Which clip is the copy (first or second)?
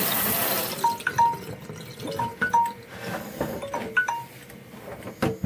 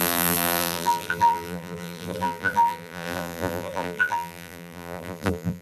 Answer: second